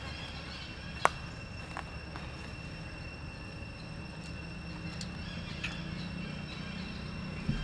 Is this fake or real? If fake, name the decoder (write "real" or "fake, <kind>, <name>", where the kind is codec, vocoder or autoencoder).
real